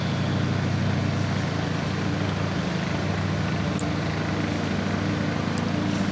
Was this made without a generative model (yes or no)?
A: yes